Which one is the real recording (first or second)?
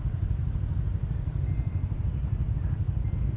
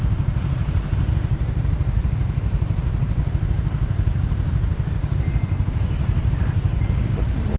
first